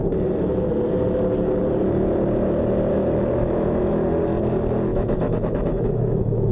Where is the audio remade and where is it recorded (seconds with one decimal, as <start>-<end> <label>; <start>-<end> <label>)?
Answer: 0.0-4.9 recorded; 4.9-6.5 remade